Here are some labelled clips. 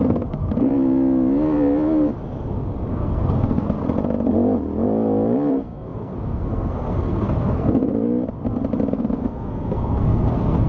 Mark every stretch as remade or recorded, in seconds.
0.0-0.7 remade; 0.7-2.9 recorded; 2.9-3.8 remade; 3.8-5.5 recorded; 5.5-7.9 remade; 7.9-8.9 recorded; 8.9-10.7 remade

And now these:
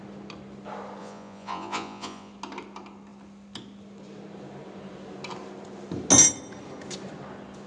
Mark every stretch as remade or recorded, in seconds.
0.0-1.0 recorded; 1.0-2.3 remade; 2.3-7.7 recorded

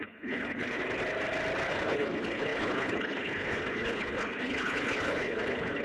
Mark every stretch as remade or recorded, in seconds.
0.0-0.8 remade; 0.8-1.7 recorded; 1.7-5.8 remade

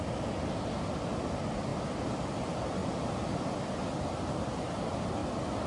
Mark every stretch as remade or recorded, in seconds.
0.0-5.7 recorded